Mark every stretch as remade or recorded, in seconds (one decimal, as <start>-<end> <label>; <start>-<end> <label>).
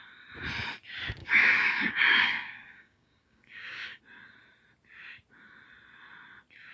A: 0.0-1.2 recorded; 1.2-4.0 remade; 4.0-6.7 recorded